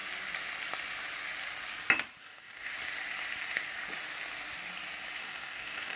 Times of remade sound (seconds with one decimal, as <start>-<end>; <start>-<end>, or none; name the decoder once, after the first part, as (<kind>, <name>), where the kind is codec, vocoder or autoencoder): 2.2-2.7 (codec, DAC); 5.2-6.0